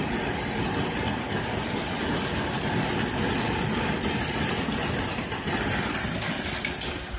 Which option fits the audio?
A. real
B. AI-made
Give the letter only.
B